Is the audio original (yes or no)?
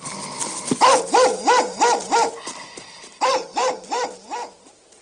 yes